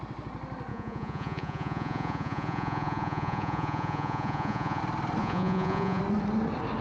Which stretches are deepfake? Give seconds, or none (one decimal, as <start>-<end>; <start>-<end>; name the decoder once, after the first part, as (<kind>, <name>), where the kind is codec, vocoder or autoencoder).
0.7-4.8 (vocoder, Vocos); 5.2-6.0